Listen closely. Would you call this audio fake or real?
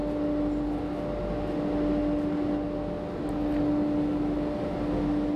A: real